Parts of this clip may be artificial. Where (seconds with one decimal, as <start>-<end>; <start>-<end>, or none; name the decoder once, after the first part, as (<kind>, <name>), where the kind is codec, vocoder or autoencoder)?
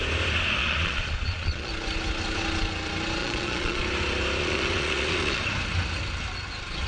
0.6-1.7 (vocoder, Vocos); 3.2-3.8; 4.4-5.4